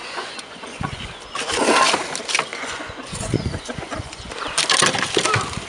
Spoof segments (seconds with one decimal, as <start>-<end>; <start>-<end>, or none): 0.0-1.1; 2.5-4.3